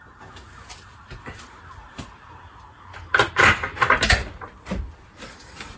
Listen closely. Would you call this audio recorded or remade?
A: recorded